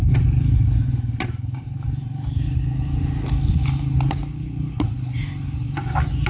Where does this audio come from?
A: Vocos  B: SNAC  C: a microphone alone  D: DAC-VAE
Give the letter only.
C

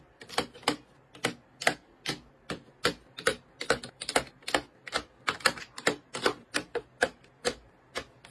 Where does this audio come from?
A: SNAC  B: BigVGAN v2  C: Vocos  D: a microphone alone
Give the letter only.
D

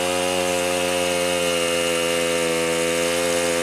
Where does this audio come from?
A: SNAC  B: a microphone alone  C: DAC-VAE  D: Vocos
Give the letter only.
B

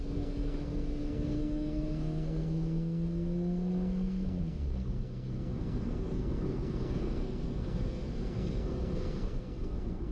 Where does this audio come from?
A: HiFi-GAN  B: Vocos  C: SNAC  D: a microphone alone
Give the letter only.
C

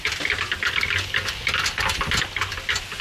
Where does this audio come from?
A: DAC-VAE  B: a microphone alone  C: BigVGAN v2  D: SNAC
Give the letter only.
B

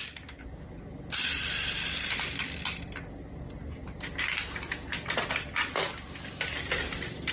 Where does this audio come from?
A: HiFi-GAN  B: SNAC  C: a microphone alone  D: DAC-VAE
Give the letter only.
C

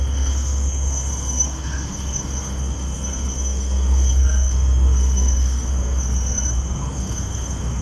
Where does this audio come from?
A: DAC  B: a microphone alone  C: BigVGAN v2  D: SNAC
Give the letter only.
D